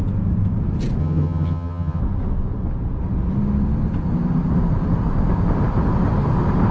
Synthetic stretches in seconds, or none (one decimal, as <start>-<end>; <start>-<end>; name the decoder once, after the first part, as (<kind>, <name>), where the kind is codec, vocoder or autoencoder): 1.0-2.0 (vocoder, HiFi-GAN)

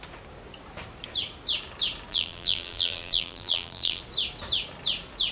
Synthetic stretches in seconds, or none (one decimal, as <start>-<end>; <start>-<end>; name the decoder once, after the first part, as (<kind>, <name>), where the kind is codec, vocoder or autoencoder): 2.1-4.0 (vocoder, BigVGAN v2)